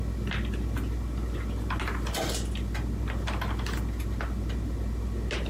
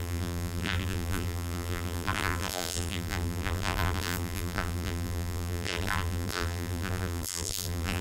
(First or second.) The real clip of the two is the first